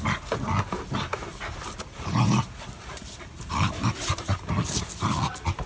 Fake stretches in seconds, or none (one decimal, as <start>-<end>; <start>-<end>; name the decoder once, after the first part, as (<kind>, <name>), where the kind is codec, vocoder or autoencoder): 1.1-4.5 (vocoder, BigVGAN v2)